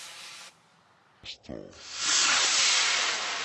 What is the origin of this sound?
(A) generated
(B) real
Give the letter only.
B